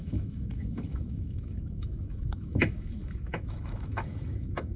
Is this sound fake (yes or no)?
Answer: yes